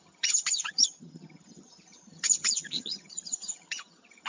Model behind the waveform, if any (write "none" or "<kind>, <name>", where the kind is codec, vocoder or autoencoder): vocoder, HiFi-GAN